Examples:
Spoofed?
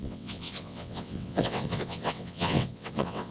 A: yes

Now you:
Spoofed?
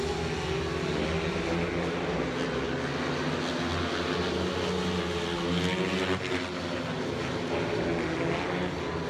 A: no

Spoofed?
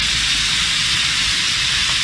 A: no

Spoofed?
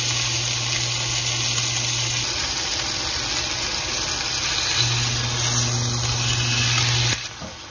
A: no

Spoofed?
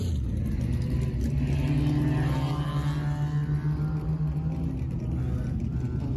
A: no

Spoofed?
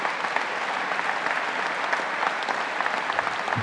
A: no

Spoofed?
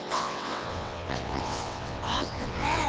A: yes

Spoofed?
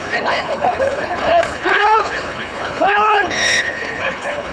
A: yes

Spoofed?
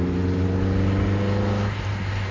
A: no